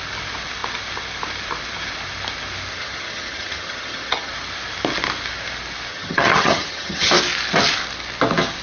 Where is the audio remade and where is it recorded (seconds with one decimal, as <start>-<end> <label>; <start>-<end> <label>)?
0.0-2.7 recorded; 2.7-4.3 remade; 4.3-5.9 recorded; 5.9-7.1 remade; 7.1-8.6 recorded